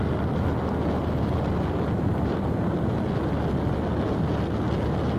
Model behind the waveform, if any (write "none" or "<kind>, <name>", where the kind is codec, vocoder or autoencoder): none